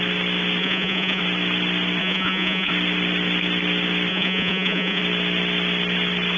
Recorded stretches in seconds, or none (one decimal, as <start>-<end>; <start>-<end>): 0.0-0.6; 1.2-2.0; 2.7-4.1; 5.0-6.4